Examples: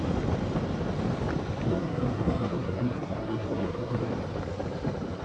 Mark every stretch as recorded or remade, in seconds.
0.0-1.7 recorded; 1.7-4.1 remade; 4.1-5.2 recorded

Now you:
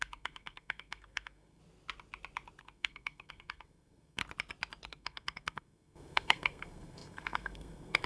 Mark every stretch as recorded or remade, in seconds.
0.0-1.6 remade; 1.6-2.6 recorded; 2.6-4.2 remade; 4.2-4.9 recorded; 4.9-8.1 remade

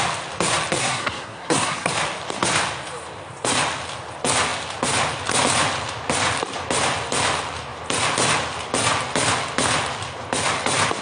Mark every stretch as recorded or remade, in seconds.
0.0-0.8 recorded; 0.8-1.9 remade; 1.9-11.0 recorded

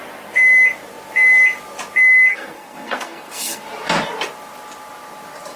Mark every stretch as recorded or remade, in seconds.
0.0-2.3 recorded; 2.3-3.6 remade; 3.6-5.6 recorded

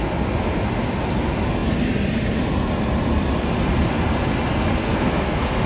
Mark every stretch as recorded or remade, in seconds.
0.0-4.8 recorded; 4.8-5.7 remade

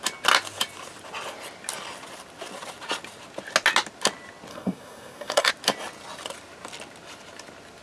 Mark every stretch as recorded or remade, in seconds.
0.0-4.5 recorded; 4.5-5.5 remade; 5.5-7.8 recorded